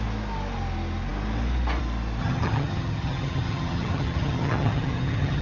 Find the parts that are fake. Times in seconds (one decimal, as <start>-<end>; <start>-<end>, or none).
2.2-5.4